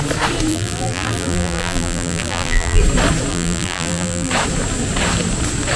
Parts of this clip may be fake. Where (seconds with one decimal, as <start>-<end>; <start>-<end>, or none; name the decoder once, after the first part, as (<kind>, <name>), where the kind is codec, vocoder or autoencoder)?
0.5-2.8 (vocoder, BigVGAN v2); 3.3-4.3